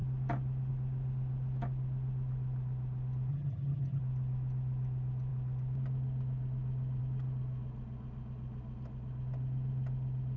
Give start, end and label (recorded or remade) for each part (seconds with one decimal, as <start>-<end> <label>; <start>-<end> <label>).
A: 0.0-3.3 recorded; 3.3-4.0 remade; 4.0-10.4 recorded